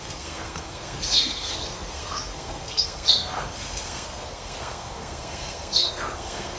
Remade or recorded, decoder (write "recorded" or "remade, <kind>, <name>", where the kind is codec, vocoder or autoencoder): remade, codec, SNAC